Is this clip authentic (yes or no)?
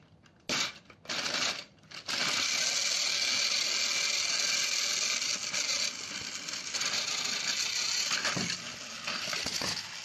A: yes